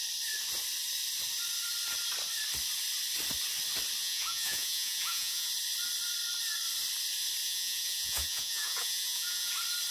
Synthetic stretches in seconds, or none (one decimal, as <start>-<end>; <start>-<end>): 4.0-5.5; 7.4-9.5